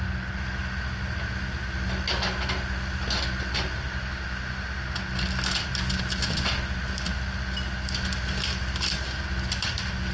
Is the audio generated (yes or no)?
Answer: no